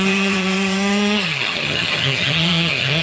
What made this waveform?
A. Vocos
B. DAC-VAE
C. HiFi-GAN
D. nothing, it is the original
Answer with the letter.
C